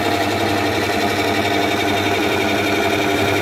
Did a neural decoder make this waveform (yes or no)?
no